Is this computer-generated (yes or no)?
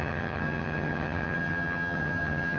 yes